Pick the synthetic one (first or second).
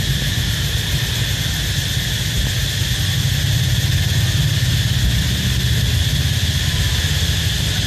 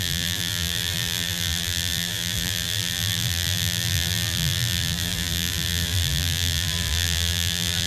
second